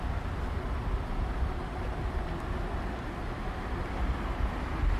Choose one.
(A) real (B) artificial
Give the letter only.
A